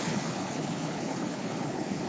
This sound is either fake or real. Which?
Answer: fake